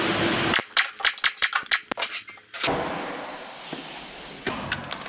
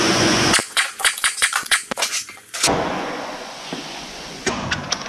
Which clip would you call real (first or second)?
first